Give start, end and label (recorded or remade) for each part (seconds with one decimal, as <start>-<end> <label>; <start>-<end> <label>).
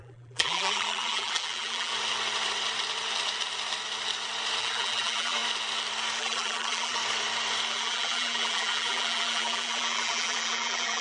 0.0-1.9 remade; 1.9-4.6 recorded; 4.6-5.4 remade; 5.4-6.2 recorded; 6.2-7.0 remade; 7.0-7.7 recorded; 7.7-11.0 remade